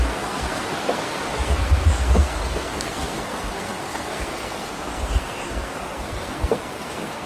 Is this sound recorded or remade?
remade